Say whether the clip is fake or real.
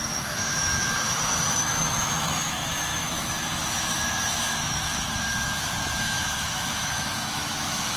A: fake